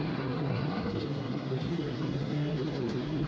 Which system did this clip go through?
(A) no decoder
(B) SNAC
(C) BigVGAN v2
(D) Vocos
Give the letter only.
B